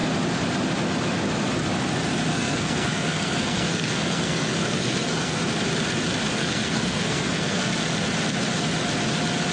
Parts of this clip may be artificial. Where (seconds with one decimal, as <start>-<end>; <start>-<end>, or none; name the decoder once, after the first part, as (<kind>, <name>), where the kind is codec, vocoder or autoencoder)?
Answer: 2.3-5.4 (codec, SNAC); 6.4-7.8